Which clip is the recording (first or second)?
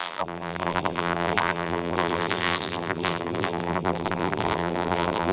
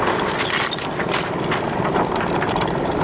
second